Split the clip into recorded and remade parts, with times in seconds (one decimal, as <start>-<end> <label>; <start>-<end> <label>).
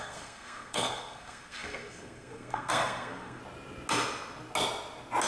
0.0-3.4 remade; 3.4-5.3 recorded